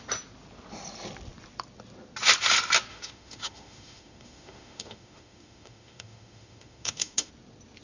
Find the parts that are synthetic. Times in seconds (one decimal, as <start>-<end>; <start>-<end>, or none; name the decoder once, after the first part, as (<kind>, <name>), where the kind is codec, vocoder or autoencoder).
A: 2.9-7.3 (autoencoder, DAC-VAE)